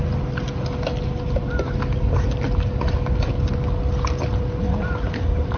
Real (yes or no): yes